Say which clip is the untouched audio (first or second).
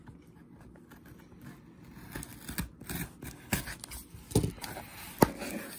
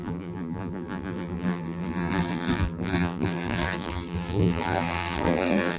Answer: first